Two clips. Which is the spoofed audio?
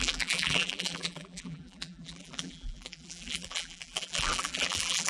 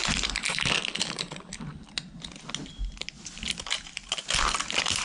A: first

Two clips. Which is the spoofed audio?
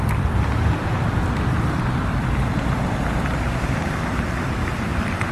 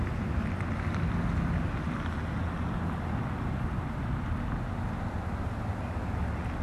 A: first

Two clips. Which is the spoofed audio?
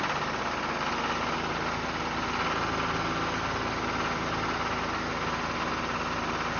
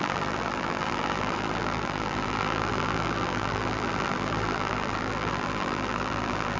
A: second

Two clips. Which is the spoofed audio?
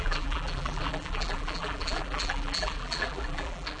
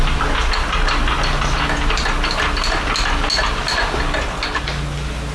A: first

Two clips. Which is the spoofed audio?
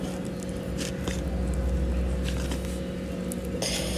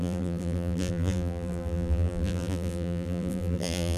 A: second